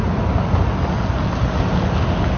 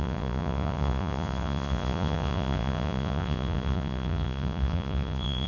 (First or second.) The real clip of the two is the first